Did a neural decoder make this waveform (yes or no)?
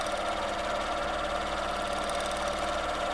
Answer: no